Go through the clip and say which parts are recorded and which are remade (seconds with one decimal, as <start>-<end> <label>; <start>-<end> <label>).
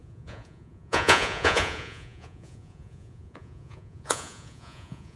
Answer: 0.0-5.2 remade